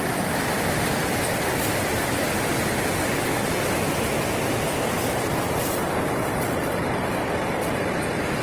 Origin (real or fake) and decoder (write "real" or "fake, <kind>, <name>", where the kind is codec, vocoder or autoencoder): real